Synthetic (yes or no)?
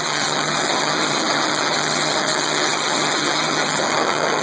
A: yes